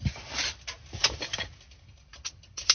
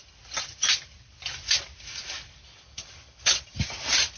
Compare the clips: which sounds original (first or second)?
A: first